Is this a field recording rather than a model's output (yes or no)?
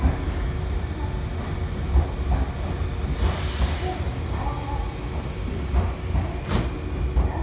yes